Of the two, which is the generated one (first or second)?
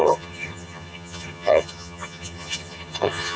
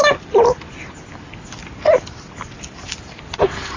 first